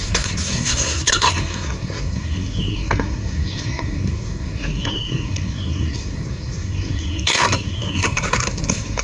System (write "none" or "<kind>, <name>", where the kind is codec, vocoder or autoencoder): codec, SNAC